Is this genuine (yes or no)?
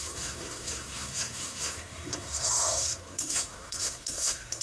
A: no